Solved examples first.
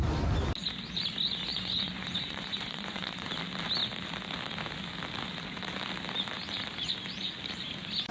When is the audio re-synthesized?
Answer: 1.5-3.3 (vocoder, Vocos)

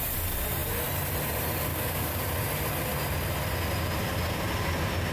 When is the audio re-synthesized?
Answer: 1.7-2.2 (codec, DAC)

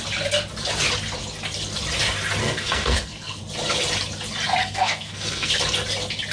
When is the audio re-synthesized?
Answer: 2.4-3.4 (codec, SNAC); 4.6-5.5

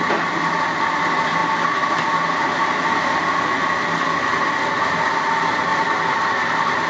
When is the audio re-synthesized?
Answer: none